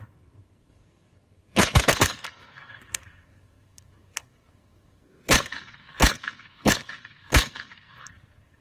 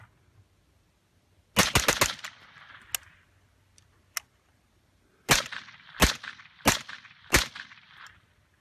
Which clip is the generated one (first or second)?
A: first